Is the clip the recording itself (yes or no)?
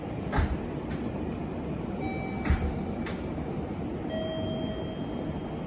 yes